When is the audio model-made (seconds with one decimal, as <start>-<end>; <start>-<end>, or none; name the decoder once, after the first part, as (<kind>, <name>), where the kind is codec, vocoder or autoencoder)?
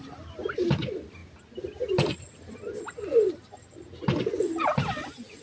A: none